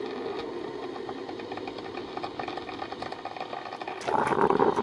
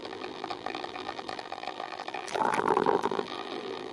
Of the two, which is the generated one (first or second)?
second